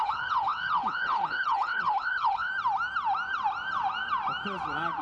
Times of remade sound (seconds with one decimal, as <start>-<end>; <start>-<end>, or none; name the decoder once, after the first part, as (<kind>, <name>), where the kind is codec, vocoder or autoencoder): 0.0-2.5 (codec, HILCodec)